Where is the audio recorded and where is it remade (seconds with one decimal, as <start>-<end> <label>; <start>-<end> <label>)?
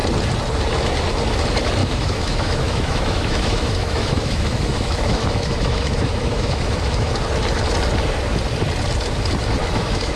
0.0-1.8 recorded; 1.8-7.1 remade; 7.1-9.6 recorded; 9.6-10.2 remade